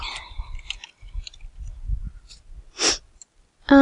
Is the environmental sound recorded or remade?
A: recorded